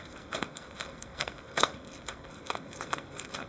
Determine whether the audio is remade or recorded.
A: remade